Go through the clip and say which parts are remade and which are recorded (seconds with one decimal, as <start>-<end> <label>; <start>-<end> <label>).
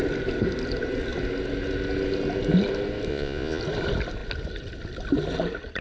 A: 0.0-3.1 recorded; 3.1-3.6 remade; 3.6-5.8 recorded